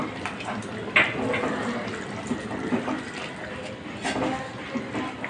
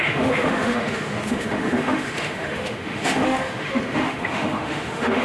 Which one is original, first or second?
first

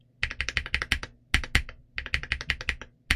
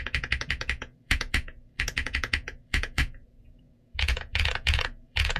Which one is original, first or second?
first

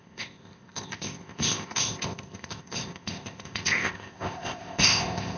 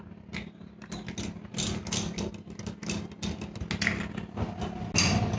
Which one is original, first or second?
second